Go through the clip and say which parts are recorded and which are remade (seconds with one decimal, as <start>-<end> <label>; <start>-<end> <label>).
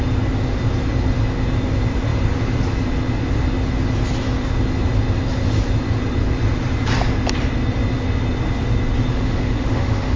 0.0-9.1 recorded; 9.1-10.2 remade